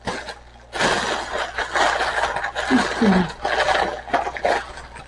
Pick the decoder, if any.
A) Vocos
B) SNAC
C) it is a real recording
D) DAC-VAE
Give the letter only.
C